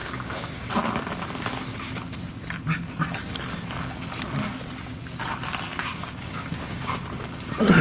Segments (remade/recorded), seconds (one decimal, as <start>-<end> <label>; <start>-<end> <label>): 0.0-0.7 remade; 0.7-5.7 recorded; 5.7-7.3 remade; 7.3-7.8 recorded